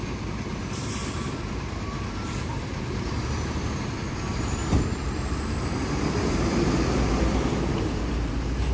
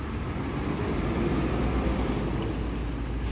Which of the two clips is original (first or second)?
second